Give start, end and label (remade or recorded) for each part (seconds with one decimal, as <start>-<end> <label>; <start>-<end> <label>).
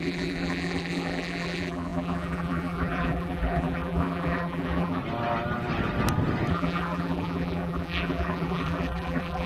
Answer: 0.0-5.0 remade; 5.0-6.5 recorded; 6.5-9.5 remade